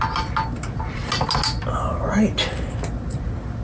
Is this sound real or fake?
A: real